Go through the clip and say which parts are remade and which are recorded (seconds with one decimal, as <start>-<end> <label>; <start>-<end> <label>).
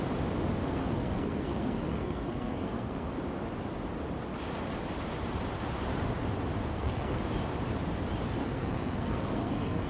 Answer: 0.0-0.6 recorded; 0.6-3.1 remade; 3.1-6.7 recorded; 6.7-7.2 remade; 7.2-8.4 recorded; 8.4-9.9 remade